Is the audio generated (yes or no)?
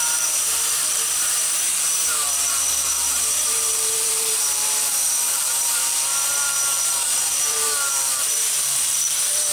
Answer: yes